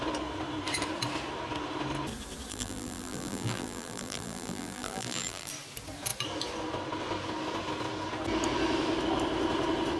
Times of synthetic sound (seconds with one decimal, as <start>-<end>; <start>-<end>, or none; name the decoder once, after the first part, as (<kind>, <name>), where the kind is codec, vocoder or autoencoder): 2.5-5.5 (vocoder, BigVGAN v2)